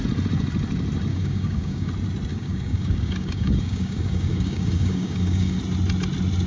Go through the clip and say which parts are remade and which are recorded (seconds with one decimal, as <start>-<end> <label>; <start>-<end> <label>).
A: 0.0-1.1 recorded; 1.1-1.9 remade; 1.9-2.3 recorded; 2.3-5.6 remade; 5.6-6.5 recorded